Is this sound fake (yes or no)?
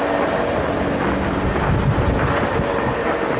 no